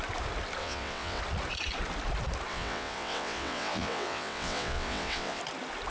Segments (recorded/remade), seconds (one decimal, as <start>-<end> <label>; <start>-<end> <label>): 0.0-0.6 recorded; 0.6-1.2 remade; 1.2-2.5 recorded; 2.5-5.4 remade; 5.4-5.9 recorded